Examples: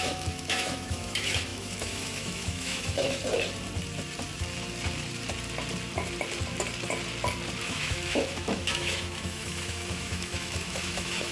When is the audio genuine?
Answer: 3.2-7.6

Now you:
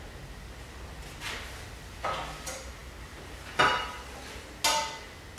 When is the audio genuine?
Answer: 0.0-5.4

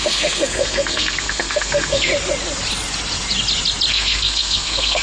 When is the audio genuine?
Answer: 2.1-3.9

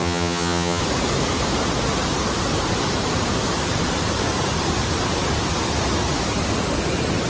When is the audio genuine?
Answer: 0.8-7.3

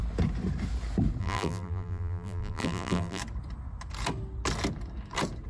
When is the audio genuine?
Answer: 0.0-1.2; 3.2-5.5

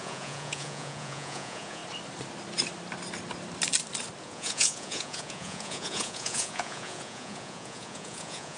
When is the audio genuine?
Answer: 1.8-4.2